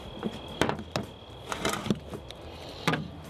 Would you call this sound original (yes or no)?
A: yes